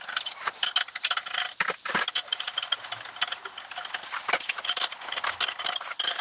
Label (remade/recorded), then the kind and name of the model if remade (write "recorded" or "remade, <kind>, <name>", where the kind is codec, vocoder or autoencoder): recorded